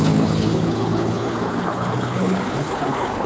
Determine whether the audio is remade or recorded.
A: remade